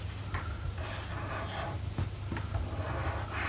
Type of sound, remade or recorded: recorded